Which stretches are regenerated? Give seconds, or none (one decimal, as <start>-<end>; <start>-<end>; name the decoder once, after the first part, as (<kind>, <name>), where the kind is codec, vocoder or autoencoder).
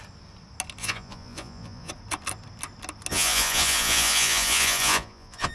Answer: 0.8-1.9 (vocoder, Vocos); 3.1-5.5